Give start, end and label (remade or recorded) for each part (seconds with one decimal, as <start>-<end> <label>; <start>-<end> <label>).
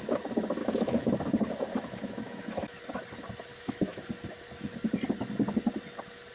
0.0-0.6 recorded; 0.6-1.1 remade; 1.1-1.7 recorded; 1.7-2.8 remade; 2.8-3.5 recorded; 3.5-4.1 remade; 4.1-6.3 recorded